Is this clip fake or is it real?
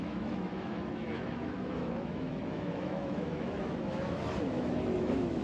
fake